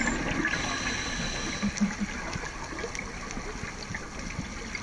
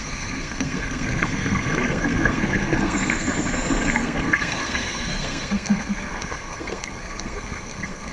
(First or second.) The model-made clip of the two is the second